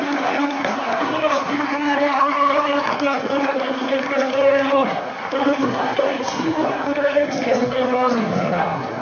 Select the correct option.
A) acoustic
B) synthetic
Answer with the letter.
B